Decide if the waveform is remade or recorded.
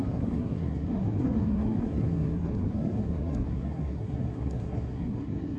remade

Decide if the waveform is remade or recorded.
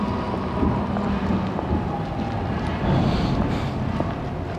recorded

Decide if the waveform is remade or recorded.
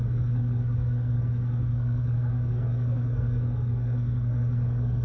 remade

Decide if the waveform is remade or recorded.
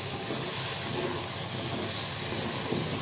recorded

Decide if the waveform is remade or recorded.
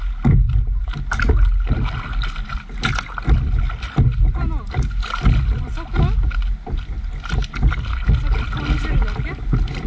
recorded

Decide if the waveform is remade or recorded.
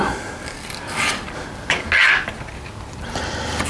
recorded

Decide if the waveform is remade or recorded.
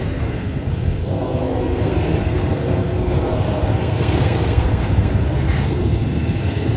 remade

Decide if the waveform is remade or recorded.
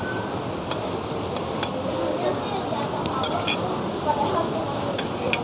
recorded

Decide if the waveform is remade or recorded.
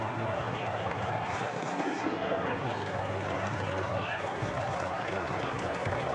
remade